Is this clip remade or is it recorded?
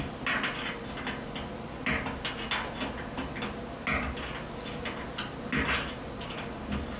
recorded